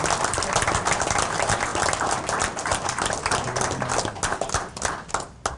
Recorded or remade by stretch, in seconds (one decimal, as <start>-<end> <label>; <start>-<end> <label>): 0.0-5.6 recorded